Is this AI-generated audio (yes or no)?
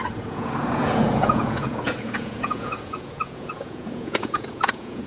yes